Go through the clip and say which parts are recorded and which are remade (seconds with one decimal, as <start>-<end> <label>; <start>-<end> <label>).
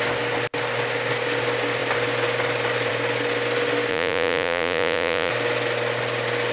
0.0-3.9 recorded; 3.9-5.3 remade; 5.3-6.5 recorded